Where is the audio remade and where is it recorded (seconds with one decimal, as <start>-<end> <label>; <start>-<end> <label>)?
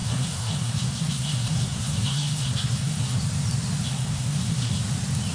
0.0-3.2 remade; 3.2-3.9 recorded; 3.9-4.8 remade; 4.8-5.3 recorded